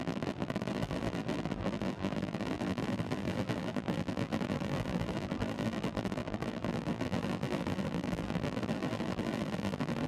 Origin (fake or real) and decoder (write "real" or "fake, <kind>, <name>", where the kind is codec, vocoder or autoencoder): fake, vocoder, BigVGAN v2